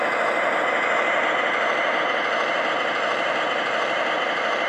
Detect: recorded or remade recorded